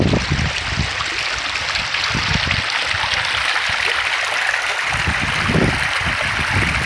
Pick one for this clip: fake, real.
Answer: real